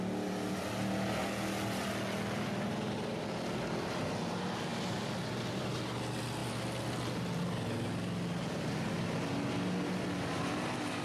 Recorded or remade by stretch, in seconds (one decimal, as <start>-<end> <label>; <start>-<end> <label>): 0.0-11.0 recorded